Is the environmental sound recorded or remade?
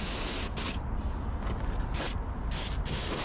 recorded